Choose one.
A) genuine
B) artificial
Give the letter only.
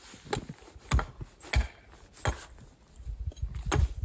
A